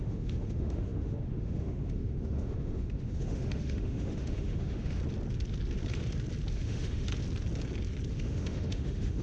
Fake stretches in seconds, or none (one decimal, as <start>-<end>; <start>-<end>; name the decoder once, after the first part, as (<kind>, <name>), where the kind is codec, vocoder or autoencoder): 0.0-5.0 (autoencoder, DAC-VAE); 6.5-7.1; 8.1-9.2